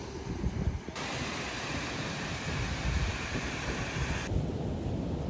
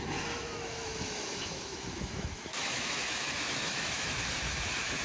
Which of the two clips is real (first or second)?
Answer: first